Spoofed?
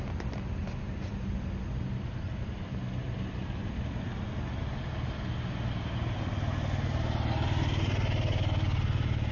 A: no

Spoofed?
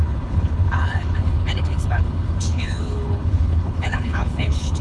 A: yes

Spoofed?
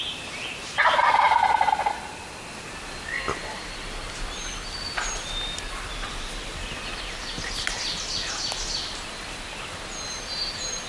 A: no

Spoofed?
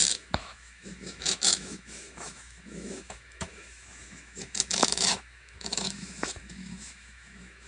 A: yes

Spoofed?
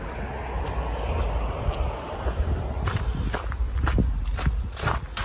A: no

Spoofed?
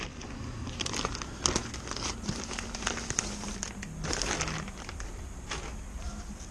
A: no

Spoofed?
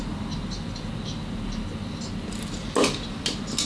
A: no